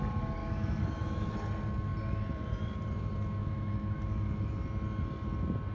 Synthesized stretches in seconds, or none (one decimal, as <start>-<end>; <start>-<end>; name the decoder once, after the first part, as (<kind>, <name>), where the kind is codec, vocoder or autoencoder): 0.4-1.3 (autoencoder, DAC-VAE); 3.4-4.5